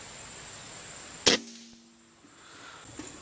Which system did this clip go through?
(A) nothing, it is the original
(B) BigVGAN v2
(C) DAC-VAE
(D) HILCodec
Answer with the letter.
A